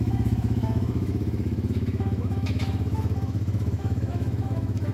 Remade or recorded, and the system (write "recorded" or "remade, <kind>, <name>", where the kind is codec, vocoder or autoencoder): remade, autoencoder, DAC-VAE